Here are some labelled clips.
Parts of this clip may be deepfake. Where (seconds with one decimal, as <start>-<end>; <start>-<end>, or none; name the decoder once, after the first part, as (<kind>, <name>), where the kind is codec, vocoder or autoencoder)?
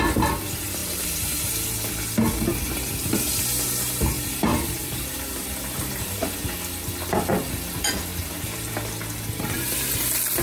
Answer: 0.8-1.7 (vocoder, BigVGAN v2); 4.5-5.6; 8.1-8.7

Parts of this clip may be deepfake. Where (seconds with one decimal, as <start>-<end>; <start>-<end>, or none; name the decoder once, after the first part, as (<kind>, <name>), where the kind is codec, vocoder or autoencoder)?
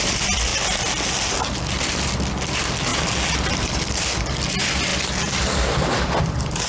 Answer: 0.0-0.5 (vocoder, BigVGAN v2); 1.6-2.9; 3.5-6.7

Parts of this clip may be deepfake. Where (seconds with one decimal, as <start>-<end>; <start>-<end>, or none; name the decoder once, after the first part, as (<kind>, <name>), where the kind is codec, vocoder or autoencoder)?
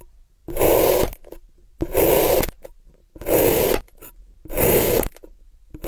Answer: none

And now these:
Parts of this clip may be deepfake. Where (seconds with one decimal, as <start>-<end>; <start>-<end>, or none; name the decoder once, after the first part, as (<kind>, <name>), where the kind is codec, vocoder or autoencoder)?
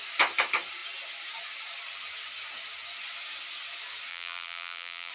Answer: 4.1-5.1 (vocoder, BigVGAN v2)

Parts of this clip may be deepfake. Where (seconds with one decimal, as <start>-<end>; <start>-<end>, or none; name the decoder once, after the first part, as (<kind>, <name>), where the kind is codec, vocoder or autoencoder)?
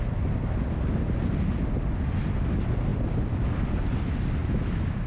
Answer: none